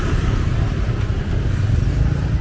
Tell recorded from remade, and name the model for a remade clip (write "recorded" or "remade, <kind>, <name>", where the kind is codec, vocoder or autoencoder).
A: recorded